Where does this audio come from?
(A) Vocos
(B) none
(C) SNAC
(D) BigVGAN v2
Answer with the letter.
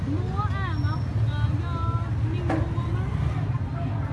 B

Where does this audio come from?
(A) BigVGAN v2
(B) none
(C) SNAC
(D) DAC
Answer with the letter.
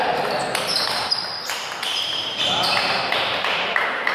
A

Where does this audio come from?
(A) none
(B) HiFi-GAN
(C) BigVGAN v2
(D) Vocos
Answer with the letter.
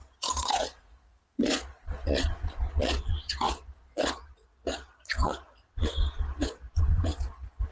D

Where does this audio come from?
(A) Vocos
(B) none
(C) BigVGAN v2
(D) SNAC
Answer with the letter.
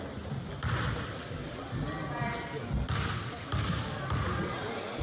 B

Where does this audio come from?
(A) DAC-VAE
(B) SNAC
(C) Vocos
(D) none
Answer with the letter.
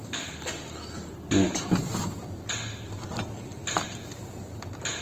D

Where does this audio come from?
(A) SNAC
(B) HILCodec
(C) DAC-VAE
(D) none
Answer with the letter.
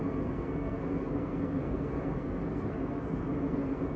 A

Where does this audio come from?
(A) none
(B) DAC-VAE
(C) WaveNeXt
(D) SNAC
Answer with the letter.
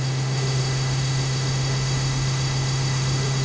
B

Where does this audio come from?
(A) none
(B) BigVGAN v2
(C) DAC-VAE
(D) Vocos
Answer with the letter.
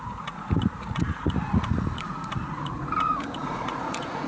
D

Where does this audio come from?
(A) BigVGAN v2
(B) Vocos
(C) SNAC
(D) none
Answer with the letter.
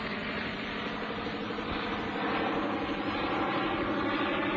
D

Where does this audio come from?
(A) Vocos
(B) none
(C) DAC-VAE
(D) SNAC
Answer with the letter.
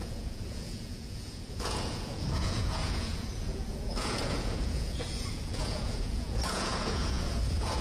A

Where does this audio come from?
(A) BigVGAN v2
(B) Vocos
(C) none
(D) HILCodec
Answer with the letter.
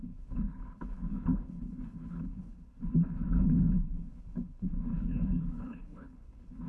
D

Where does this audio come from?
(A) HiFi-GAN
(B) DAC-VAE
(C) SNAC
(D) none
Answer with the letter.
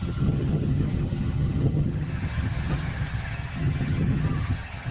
A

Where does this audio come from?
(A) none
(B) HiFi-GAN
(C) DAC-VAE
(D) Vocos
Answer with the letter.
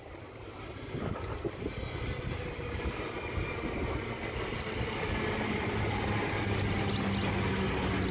A